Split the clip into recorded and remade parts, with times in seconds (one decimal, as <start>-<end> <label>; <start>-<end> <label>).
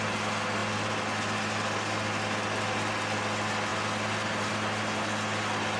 0.0-5.8 recorded